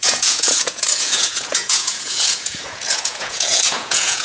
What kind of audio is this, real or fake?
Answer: fake